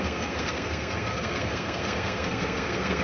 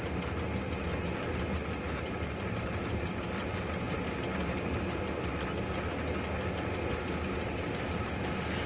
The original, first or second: second